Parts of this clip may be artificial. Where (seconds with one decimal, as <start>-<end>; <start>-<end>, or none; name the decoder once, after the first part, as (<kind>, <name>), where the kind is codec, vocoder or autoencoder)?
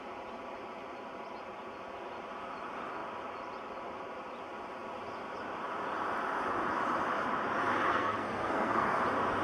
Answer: 7.9-9.0 (codec, SNAC)